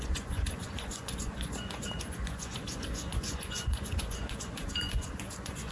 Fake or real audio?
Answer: fake